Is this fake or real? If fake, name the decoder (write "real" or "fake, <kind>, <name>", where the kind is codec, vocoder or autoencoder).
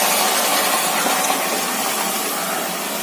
fake, vocoder, BigVGAN v2